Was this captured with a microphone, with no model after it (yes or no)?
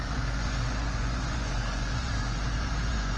no